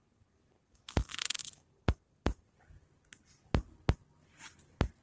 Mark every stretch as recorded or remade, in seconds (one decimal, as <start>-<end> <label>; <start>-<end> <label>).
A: 0.0-5.0 recorded